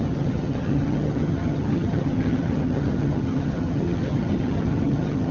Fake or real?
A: fake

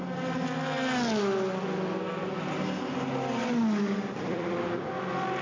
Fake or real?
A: real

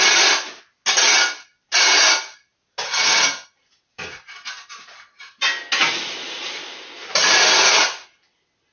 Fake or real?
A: real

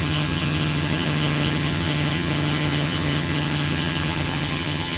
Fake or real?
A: fake